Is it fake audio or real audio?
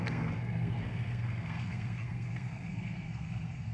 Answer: fake